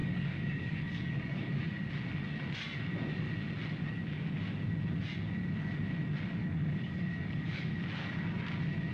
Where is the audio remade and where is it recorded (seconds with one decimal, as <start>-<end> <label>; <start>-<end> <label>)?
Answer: 0.0-1.9 remade; 1.9-6.4 recorded; 6.4-7.7 remade; 7.7-8.9 recorded